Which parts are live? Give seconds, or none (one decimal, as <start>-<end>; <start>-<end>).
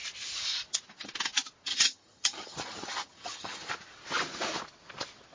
0.0-1.7; 3.7-5.3